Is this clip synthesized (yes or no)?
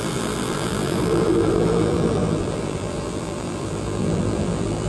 yes